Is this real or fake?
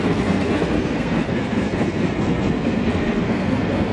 fake